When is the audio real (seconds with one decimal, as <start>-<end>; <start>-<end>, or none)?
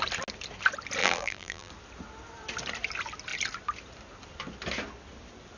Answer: 0.0-1.0; 1.7-5.6